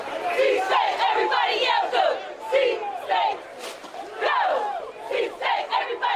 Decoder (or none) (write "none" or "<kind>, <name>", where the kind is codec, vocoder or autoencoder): none